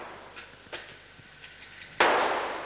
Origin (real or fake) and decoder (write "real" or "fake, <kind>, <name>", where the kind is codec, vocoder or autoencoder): real